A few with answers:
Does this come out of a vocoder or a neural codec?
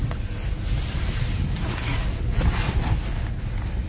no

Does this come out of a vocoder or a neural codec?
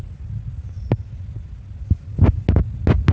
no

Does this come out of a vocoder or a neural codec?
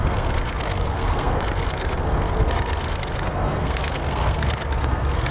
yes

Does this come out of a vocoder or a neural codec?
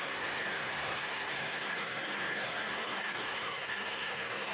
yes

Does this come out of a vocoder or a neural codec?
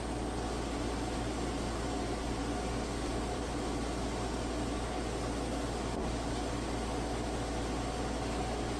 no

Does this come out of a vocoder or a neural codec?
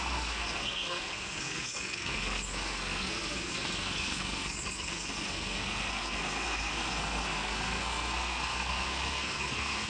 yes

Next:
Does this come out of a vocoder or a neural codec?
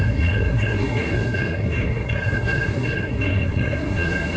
yes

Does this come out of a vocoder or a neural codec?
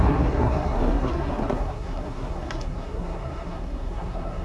yes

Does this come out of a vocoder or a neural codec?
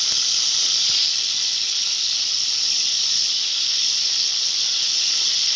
no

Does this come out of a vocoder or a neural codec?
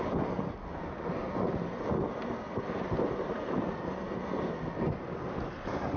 no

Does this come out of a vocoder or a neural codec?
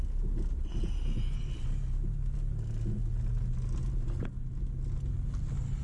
no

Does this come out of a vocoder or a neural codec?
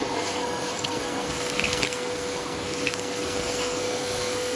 yes